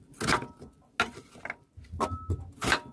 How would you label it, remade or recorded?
recorded